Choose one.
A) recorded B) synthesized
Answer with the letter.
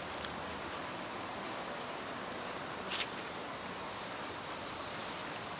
B